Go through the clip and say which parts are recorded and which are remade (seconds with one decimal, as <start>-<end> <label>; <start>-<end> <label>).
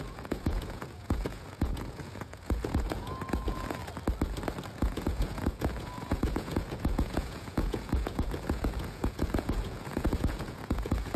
0.0-3.8 remade; 3.8-4.7 recorded; 4.7-11.2 remade